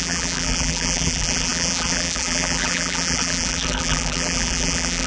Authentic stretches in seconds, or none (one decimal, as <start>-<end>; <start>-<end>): none